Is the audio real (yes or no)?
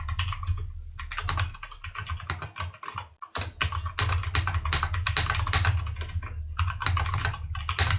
yes